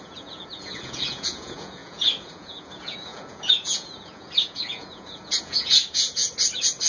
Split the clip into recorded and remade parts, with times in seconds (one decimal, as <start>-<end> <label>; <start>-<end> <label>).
0.0-6.2 remade; 6.2-6.9 recorded